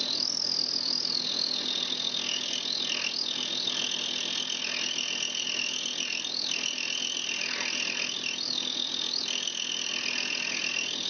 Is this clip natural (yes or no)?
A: yes